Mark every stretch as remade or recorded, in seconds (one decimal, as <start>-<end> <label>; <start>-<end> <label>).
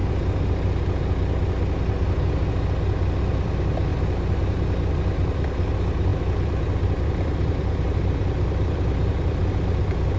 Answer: 0.0-3.2 recorded; 3.2-3.9 remade; 3.9-4.9 recorded; 4.9-10.2 remade